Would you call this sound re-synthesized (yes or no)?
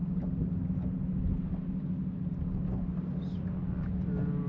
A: no